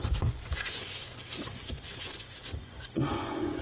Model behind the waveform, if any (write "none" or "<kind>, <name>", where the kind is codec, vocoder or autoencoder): vocoder, Vocos